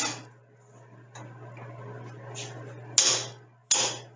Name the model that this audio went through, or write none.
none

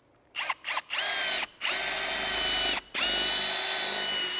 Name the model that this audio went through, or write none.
none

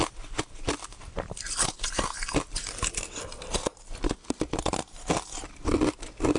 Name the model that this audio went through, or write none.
none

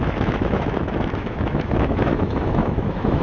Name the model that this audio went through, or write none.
autoencoder, DAC-VAE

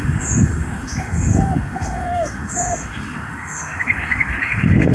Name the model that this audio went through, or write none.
autoencoder, DAC-VAE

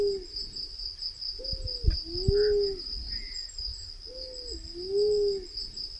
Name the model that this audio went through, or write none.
none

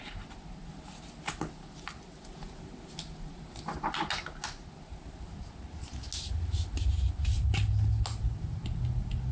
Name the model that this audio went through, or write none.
none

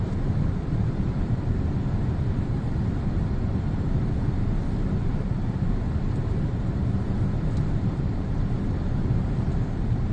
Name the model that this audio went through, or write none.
vocoder, BigVGAN v2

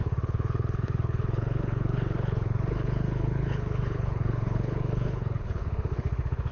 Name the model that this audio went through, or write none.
codec, HILCodec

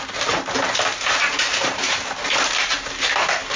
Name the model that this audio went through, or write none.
vocoder, BigVGAN v2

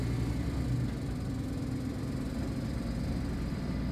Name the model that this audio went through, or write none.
none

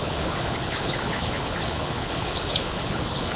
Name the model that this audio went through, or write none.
codec, HILCodec